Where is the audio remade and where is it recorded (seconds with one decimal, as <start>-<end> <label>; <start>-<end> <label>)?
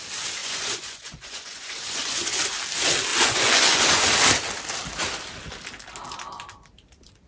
0.0-0.4 recorded; 0.4-2.4 remade; 2.4-3.1 recorded; 3.1-4.1 remade; 4.1-7.3 recorded